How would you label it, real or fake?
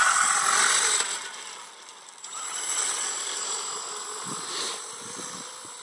real